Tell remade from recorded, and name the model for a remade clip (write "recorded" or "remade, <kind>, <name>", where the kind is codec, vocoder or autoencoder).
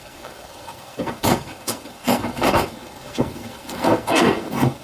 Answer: remade, codec, SNAC